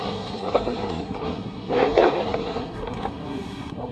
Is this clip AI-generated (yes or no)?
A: yes